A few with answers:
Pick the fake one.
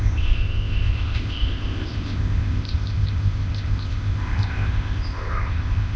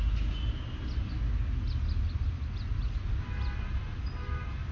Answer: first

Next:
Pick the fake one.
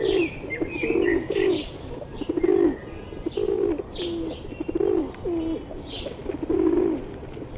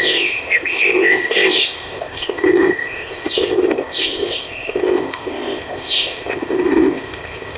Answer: second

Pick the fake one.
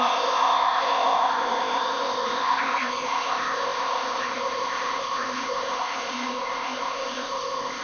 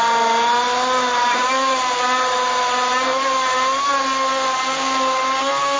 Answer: first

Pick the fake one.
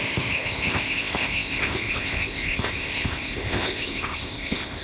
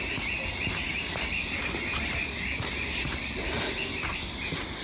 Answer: first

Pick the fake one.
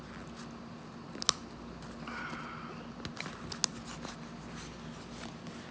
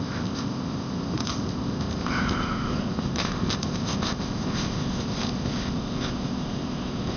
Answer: second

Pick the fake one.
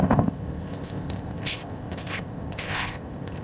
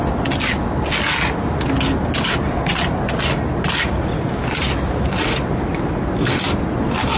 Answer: first